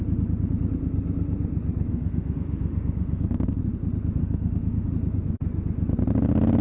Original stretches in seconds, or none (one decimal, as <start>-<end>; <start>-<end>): 0.0-1.9; 3.6-4.2; 4.9-6.6